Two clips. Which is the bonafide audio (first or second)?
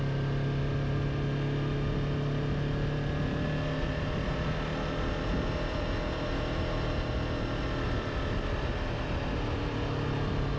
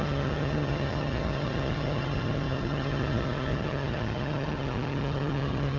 first